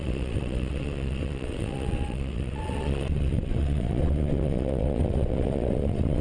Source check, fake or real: fake